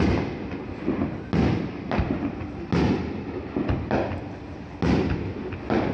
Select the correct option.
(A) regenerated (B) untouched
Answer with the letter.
B